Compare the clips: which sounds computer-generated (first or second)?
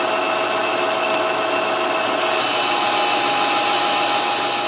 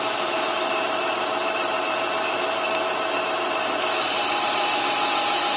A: second